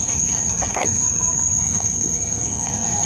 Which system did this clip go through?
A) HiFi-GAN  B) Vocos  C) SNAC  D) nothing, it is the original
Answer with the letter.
C